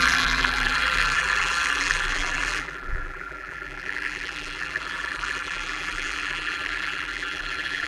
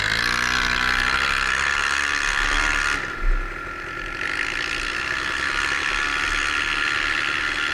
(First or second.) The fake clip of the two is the first